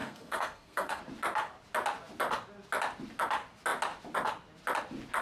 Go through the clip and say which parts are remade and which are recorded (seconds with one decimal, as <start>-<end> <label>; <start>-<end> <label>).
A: 0.0-1.0 remade; 1.0-5.2 recorded